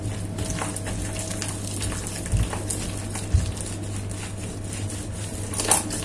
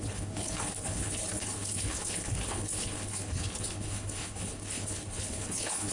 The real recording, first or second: first